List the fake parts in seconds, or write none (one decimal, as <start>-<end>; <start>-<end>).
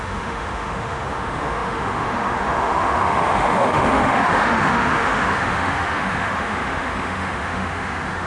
0.0-8.3